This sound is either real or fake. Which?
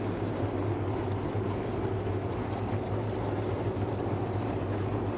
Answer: real